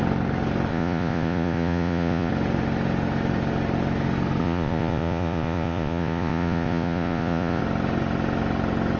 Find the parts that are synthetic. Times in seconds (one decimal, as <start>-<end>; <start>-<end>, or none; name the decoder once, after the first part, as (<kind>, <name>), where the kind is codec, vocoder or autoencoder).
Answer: 0.7-2.3 (vocoder, Vocos); 4.4-7.6